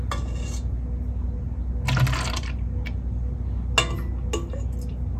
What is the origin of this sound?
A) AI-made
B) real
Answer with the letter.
B